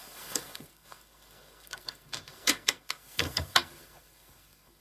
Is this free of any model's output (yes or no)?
no